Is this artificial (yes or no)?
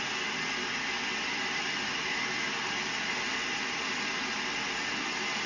no